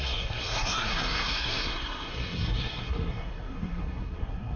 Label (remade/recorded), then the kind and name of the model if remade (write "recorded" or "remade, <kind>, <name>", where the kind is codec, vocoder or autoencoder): remade, codec, SNAC